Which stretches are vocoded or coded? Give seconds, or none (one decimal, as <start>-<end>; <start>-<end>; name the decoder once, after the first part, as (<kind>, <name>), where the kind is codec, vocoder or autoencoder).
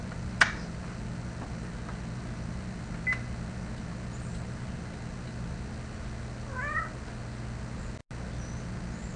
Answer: none